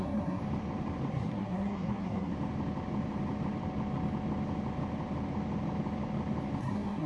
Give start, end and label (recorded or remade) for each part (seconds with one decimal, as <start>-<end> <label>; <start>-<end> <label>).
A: 0.0-0.4 remade; 0.4-1.1 recorded; 1.1-2.3 remade; 2.3-6.6 recorded; 6.6-7.1 remade